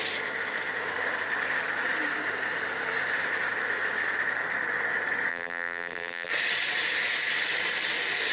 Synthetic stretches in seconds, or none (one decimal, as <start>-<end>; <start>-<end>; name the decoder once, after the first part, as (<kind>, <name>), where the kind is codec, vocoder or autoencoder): 5.3-6.3 (vocoder, BigVGAN v2)